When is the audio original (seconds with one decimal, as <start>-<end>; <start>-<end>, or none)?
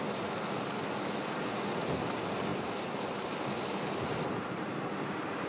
0.0-5.5